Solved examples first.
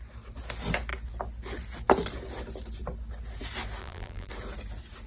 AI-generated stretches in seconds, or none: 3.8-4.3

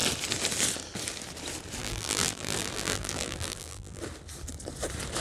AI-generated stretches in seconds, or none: 1.8-4.0

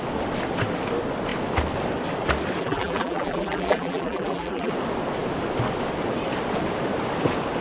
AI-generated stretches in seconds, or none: 2.6-4.7

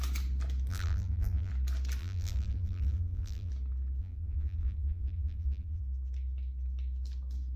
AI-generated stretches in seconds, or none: 0.7-1.5; 2.0-3.5; 4.0-5.8